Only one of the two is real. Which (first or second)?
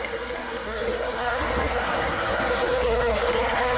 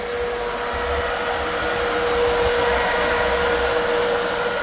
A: second